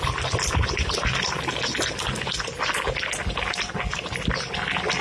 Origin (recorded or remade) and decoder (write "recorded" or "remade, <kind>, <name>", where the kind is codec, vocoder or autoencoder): recorded